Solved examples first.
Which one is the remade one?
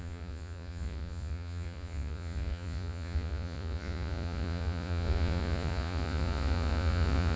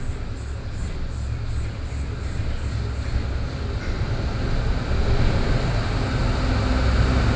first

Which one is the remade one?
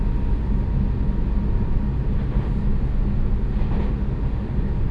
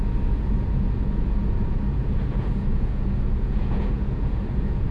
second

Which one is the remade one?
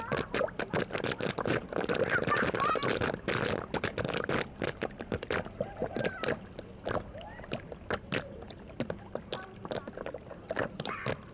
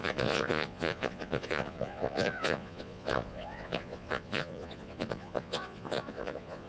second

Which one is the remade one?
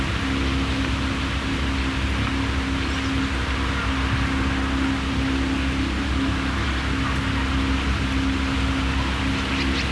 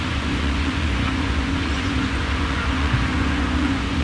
second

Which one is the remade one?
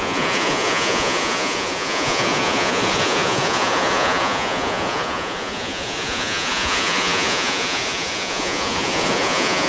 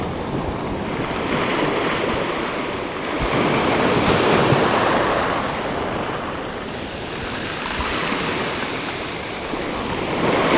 first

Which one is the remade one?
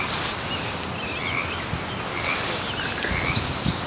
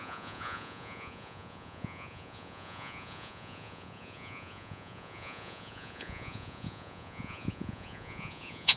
second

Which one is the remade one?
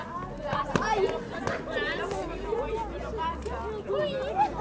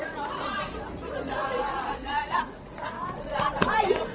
second